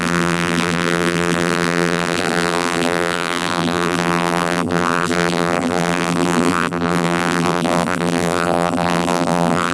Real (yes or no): no